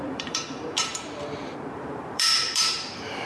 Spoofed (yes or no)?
yes